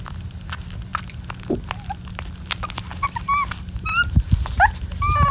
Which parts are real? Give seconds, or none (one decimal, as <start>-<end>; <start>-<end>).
0.0-5.3

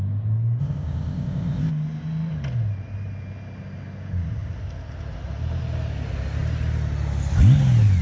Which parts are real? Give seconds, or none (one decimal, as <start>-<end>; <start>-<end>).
0.0-0.6; 1.7-8.0

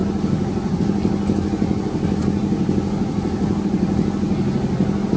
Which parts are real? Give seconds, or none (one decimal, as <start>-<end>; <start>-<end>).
0.7-2.4; 3.1-5.2